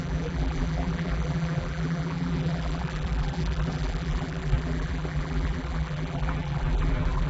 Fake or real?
fake